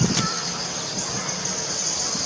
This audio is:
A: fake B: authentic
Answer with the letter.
B